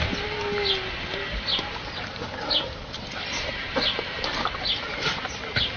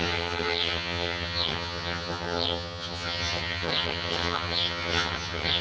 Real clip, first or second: first